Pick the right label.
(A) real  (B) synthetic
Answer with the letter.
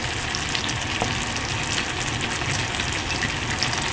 A